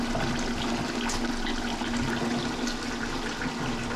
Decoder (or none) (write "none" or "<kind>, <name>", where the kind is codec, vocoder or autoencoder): none